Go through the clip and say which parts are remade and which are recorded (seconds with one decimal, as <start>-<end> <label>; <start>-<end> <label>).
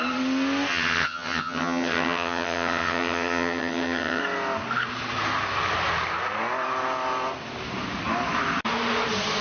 0.0-0.7 recorded; 0.7-4.2 remade; 4.2-9.4 recorded